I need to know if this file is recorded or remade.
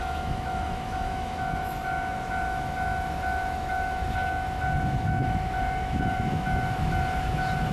remade